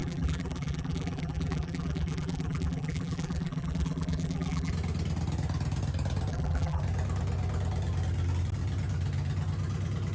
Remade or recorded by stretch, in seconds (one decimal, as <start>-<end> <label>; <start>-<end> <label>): 0.0-4.7 remade; 4.7-6.3 recorded; 6.3-6.8 remade; 6.8-10.1 recorded